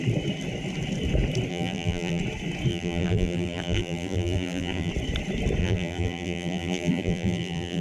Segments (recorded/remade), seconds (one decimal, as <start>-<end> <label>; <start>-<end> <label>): 0.0-1.5 recorded; 1.5-2.2 remade; 2.2-2.7 recorded; 2.7-4.9 remade; 4.9-5.6 recorded; 5.6-7.8 remade